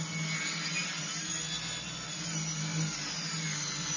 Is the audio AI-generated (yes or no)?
no